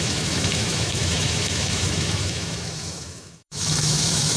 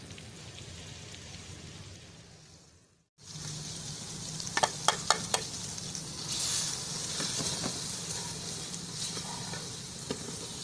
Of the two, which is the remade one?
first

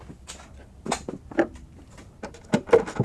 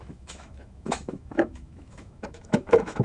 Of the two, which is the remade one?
second